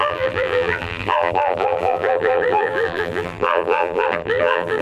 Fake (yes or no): yes